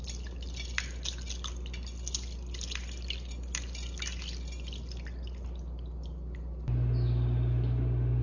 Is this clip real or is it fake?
real